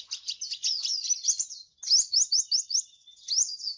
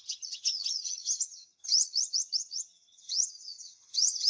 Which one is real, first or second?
first